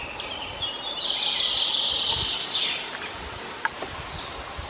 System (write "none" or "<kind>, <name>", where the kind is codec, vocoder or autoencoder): none